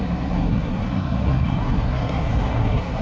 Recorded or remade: remade